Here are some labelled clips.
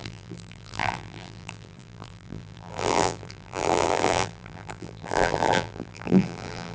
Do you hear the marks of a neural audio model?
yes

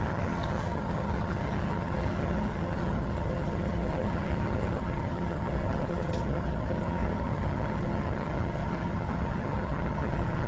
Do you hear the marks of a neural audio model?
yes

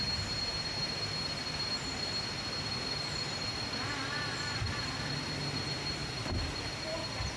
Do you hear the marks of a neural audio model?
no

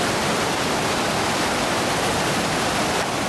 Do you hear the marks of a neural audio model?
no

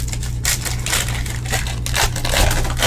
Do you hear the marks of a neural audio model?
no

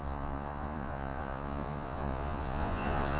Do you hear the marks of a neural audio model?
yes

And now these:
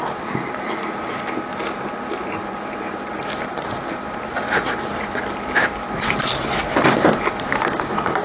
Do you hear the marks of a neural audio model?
yes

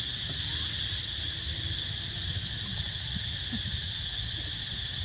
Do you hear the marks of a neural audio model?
no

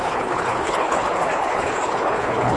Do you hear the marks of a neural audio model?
yes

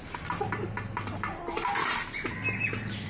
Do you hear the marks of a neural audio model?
no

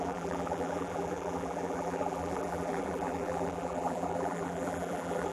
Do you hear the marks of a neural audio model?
yes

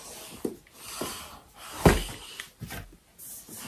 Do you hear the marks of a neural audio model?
no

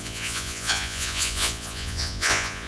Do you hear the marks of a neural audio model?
yes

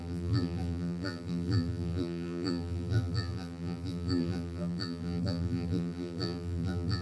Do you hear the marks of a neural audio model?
yes